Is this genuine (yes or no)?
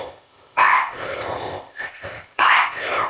no